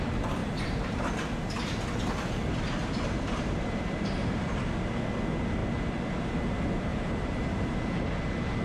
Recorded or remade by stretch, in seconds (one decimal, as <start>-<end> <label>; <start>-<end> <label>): 0.0-0.4 recorded; 0.4-1.1 remade; 1.1-2.8 recorded; 2.8-4.6 remade; 4.6-6.9 recorded; 6.9-7.8 remade; 7.8-8.6 recorded